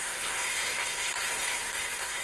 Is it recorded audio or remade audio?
remade